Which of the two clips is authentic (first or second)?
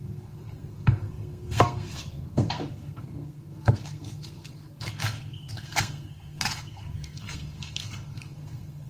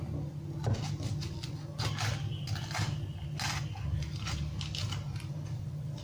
second